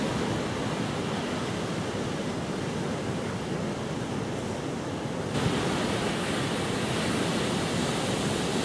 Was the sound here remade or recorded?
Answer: recorded